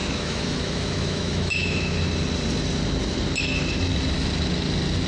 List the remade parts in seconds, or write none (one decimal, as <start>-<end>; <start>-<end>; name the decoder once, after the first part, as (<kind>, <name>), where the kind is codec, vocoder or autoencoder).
0.0-2.0 (autoencoder, DAC-VAE)